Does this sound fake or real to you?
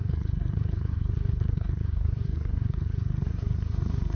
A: fake